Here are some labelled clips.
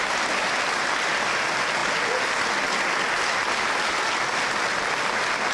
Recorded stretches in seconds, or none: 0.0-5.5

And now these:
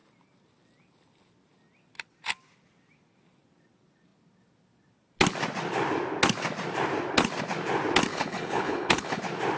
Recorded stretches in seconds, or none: 0.0-8.1; 9.2-9.6

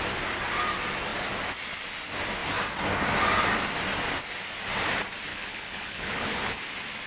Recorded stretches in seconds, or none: 0.0-5.3; 6.6-7.1